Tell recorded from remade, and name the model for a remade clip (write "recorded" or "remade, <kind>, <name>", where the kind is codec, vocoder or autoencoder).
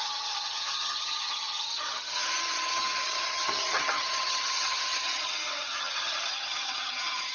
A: remade, vocoder, HiFi-GAN